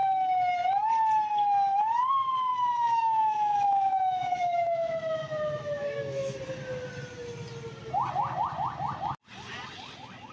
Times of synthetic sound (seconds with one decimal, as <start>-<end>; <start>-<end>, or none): 2.5-6.4